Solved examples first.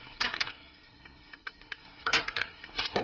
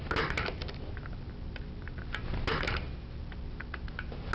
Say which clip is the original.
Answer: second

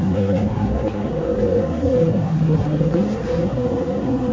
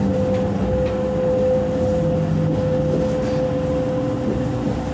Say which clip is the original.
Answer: second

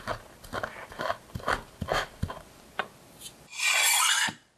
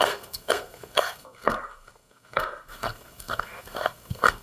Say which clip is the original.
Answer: first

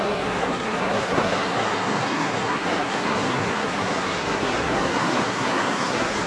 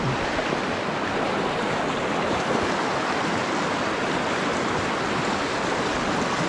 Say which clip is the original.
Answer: second